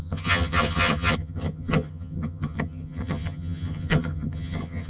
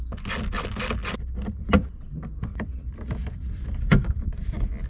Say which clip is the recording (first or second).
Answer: second